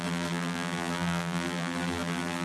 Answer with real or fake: fake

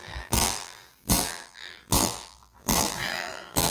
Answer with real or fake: fake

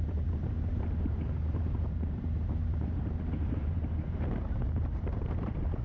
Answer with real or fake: fake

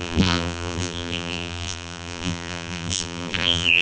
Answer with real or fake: fake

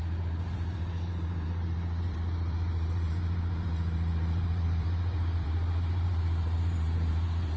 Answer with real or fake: fake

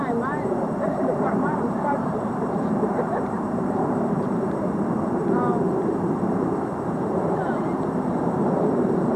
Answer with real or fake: fake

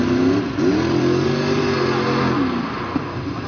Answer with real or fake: real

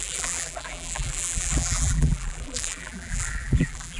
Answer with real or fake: fake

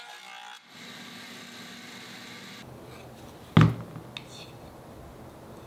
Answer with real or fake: real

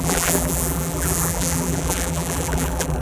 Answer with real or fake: fake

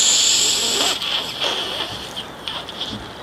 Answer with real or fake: real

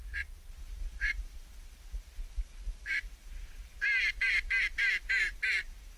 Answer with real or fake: fake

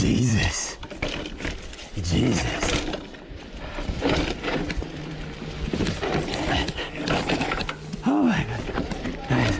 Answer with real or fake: fake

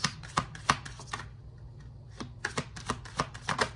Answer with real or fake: real